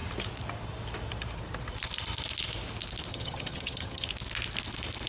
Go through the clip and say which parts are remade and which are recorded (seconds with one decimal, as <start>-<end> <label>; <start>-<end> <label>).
0.0-3.1 recorded; 3.1-4.1 remade; 4.1-5.1 recorded